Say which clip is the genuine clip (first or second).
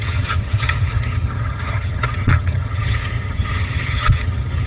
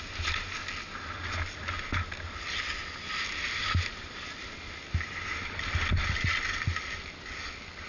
second